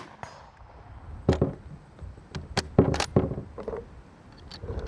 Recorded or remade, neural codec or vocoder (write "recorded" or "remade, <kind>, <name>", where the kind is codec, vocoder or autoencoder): recorded